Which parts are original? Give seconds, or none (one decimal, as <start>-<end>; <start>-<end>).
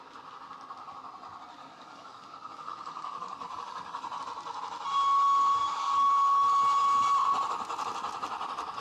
0.0-1.6; 4.2-5.6; 6.1-8.8